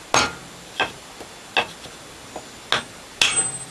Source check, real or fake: real